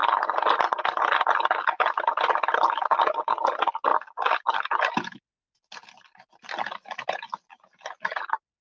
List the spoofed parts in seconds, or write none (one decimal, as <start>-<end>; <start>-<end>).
none